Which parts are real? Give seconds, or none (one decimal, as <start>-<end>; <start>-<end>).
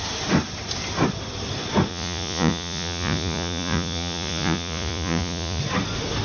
0.0-1.9; 5.6-6.2